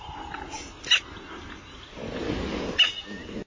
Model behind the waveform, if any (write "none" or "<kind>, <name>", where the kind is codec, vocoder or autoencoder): none